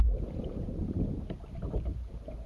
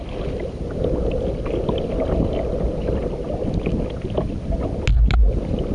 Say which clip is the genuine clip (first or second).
second